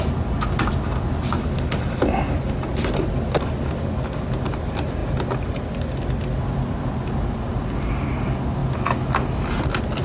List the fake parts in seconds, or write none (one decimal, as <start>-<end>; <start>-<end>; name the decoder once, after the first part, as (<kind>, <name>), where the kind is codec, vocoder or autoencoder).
none